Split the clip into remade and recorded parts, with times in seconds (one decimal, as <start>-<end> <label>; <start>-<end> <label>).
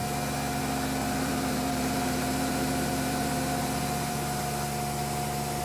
0.0-1.0 recorded; 1.0-4.4 remade; 4.4-5.6 recorded